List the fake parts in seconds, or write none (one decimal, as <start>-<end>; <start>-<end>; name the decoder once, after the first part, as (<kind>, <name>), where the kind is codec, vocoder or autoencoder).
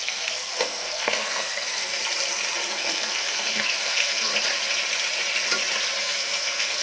0.0-2.0 (codec, SNAC); 2.7-4.3; 6.0-6.8